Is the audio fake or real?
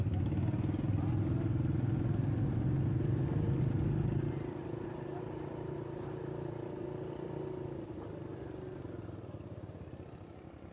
real